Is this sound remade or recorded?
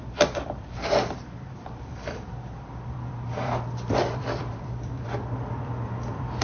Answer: remade